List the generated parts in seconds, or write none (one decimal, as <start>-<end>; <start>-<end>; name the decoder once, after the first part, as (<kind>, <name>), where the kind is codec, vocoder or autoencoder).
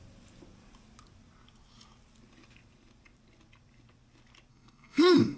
4.5-5.4 (codec, SNAC)